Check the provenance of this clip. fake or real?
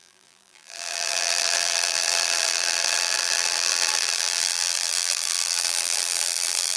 fake